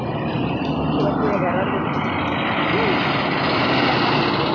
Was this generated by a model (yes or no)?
no